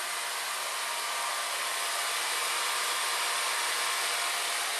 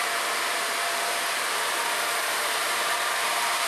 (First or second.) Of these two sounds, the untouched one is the first